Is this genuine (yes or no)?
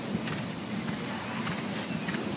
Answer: yes